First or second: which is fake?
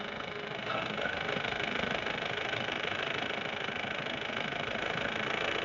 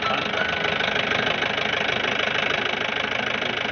first